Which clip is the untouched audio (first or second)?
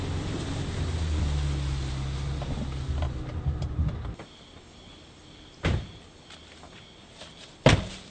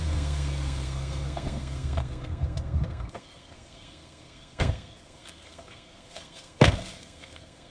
first